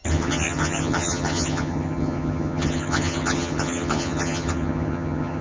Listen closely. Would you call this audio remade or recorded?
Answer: remade